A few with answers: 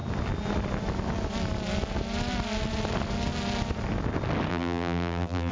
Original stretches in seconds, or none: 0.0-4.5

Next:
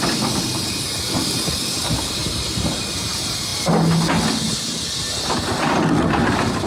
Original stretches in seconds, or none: 0.0-2.2; 2.9-6.7

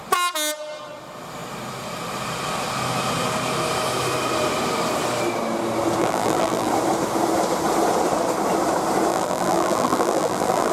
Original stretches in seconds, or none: 0.0-6.0; 6.7-9.1

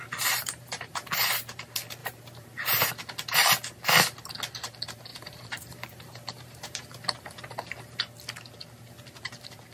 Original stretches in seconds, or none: 1.3-2.0; 2.9-5.1; 8.0-9.7

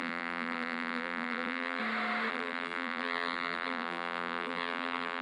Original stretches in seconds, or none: 1.8-2.3

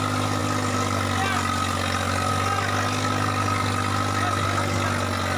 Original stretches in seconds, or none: 0.0-5.4

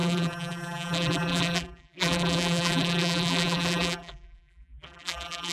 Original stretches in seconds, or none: none